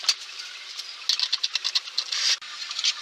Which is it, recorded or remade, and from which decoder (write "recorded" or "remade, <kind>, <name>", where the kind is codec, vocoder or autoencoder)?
recorded